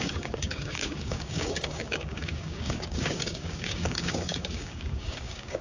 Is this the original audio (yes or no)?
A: no